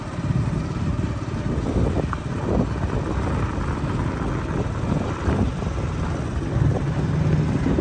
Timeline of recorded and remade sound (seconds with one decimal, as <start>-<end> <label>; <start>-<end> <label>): 0.0-7.8 recorded